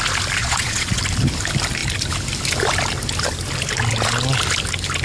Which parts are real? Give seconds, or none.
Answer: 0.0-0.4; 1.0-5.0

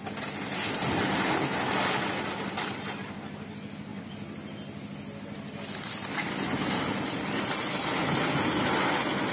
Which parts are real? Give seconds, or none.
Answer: 0.0-9.3

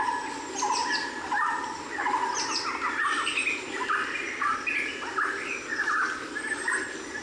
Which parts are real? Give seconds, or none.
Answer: 0.0-7.2

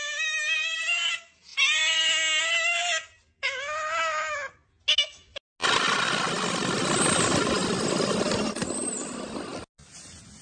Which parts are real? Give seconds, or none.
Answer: 0.0-10.4

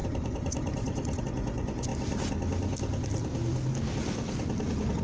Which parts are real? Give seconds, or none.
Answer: 1.9-5.0